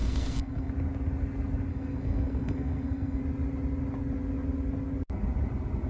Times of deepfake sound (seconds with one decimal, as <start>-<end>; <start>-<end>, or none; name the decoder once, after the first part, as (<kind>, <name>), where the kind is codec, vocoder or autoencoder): 0.0-0.7 (codec, SNAC); 1.7-3.2